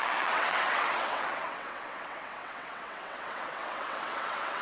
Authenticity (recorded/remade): remade